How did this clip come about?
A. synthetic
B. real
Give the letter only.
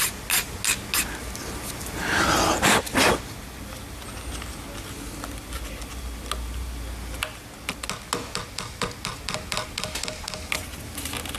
B